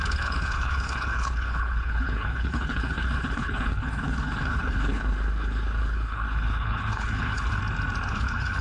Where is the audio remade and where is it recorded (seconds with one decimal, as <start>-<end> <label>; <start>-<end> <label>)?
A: 0.0-7.6 remade; 7.6-8.1 recorded; 8.1-8.6 remade